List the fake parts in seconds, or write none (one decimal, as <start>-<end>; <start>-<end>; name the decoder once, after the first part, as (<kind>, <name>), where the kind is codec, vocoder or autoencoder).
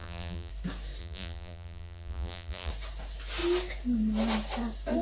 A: 0.0-0.5 (vocoder, BigVGAN v2); 1.0-2.7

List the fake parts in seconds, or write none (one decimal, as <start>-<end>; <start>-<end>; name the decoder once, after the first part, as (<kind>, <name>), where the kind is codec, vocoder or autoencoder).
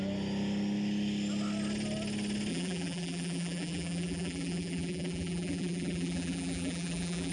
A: 2.5-7.3 (vocoder, BigVGAN v2)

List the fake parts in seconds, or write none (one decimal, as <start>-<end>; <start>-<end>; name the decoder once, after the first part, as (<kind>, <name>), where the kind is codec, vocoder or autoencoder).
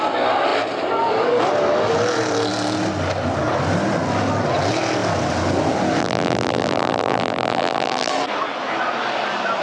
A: 6.0-8.1 (vocoder, BigVGAN v2)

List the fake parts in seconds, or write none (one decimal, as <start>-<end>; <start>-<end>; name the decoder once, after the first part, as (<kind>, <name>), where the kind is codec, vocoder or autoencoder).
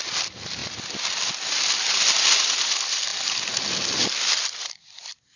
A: 0.0-0.6 (vocoder, BigVGAN v2); 2.1-3.1; 3.7-5.4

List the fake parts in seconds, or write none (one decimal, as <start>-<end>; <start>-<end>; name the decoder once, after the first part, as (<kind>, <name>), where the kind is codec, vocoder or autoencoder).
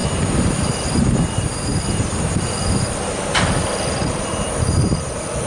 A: 0.0-3.3 (vocoder, BigVGAN v2); 4.0-5.0